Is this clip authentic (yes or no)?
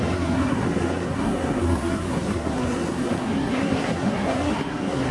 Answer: no